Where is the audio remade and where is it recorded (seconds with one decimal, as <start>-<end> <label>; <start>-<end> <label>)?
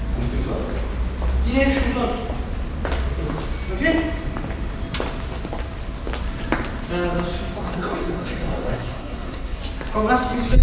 0.0-7.6 recorded; 7.6-9.6 remade; 9.6-10.6 recorded